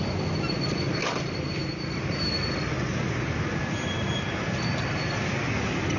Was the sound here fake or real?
real